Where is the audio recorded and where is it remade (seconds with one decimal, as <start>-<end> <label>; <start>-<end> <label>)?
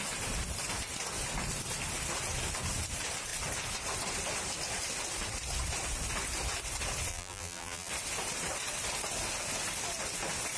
0.0-7.1 recorded; 7.1-7.9 remade; 7.9-10.6 recorded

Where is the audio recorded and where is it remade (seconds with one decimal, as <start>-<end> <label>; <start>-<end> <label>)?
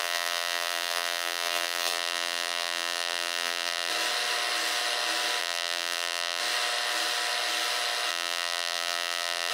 0.0-3.9 remade; 3.9-5.4 recorded; 5.4-6.4 remade; 6.4-8.1 recorded; 8.1-9.5 remade